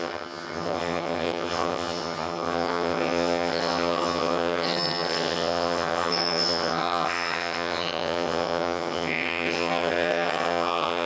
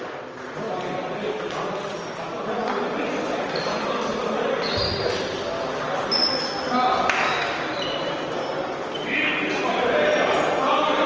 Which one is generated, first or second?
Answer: first